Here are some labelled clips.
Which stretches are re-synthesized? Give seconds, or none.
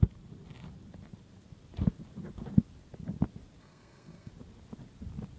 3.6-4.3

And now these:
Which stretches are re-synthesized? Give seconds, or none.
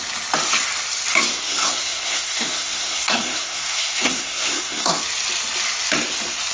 1.3-5.0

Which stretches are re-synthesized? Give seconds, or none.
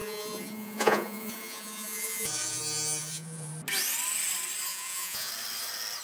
0.0-2.6; 3.0-3.5; 4.7-5.3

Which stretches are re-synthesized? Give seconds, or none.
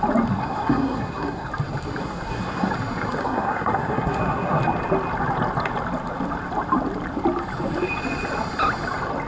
0.4-1.5; 2.0-2.7; 3.2-4.6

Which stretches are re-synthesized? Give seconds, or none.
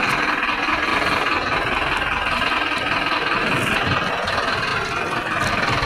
0.0-4.7; 5.5-5.9